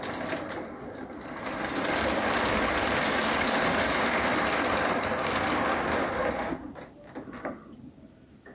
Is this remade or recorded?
recorded